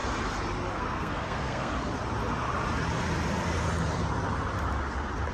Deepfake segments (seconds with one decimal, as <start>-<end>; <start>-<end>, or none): 0.7-1.7